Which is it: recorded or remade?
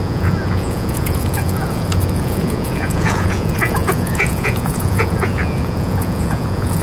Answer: remade